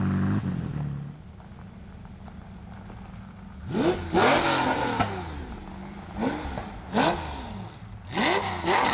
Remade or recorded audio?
recorded